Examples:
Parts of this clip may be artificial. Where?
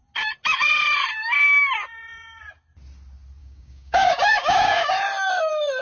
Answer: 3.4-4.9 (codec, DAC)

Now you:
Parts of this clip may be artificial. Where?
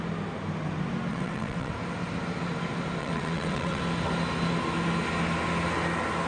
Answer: 1.1-1.7 (vocoder, WaveNeXt); 3.0-3.8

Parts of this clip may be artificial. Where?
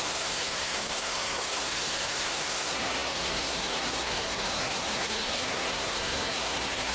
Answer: 0.0-6.9 (codec, SNAC)